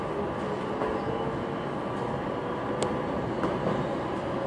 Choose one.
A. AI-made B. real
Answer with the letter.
B